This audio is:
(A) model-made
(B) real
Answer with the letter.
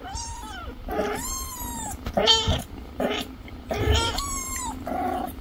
A